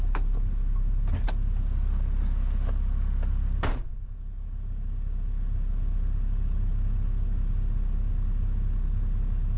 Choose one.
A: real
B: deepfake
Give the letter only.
A